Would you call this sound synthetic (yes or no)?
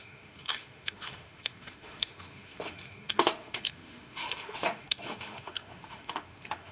yes